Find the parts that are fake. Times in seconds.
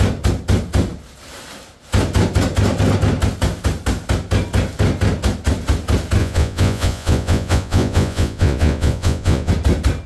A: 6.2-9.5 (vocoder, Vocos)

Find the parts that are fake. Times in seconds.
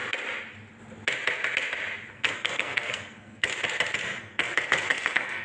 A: 2.1-3.5 (codec, SNAC); 4.2-5.4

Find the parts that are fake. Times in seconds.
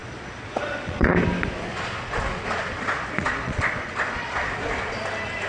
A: 0.0-1.1 (vocoder, Vocos); 1.7-5.0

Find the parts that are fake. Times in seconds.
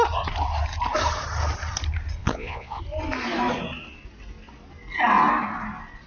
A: 2.2-2.8 (vocoder, Vocos)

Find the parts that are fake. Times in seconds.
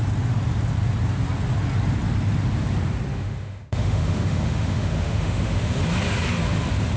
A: 3.1-5.6 (autoencoder, DAC-VAE)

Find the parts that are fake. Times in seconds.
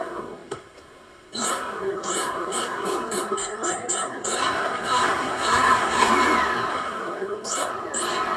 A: 0.0-6.1 (codec, SNAC); 6.7-7.7